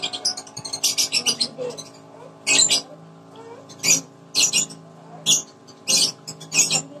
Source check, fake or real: real